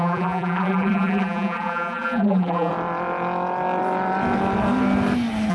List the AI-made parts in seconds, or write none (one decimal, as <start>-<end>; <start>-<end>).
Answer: 0.0-2.7